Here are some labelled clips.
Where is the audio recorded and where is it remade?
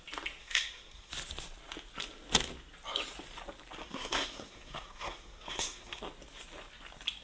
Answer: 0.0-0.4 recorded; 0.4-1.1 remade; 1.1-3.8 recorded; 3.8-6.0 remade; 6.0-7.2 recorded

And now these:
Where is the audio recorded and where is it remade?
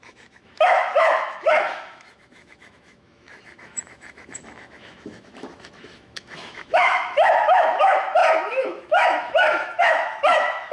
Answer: 0.0-10.7 remade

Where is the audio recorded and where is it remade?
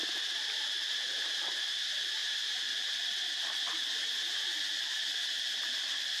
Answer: 0.0-6.2 recorded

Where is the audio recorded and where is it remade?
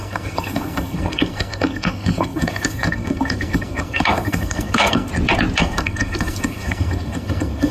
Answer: 0.0-5.1 remade; 5.1-5.6 recorded; 5.6-7.7 remade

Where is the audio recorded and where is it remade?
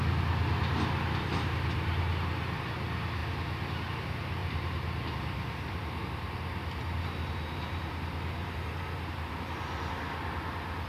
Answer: 0.0-4.4 recorded; 4.4-9.4 remade; 9.4-10.9 recorded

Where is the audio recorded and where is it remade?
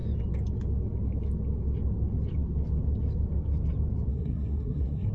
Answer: 0.0-4.1 recorded; 4.1-5.1 remade